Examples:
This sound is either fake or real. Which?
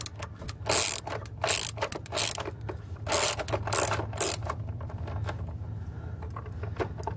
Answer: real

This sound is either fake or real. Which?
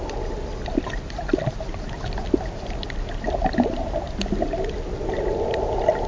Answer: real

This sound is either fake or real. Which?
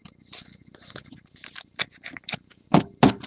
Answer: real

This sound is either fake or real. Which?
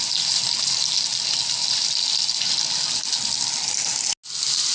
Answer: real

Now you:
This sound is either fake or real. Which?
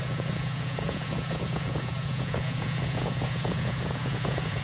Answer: fake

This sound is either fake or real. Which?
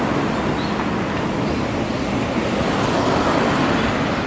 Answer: real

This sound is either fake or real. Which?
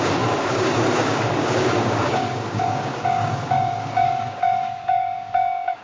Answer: fake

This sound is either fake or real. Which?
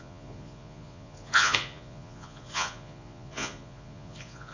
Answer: fake